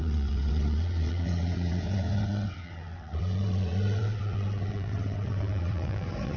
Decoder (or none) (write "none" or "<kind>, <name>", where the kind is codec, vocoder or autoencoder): vocoder, WaveNeXt